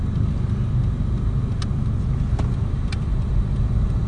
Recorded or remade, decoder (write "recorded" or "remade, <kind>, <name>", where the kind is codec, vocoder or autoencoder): recorded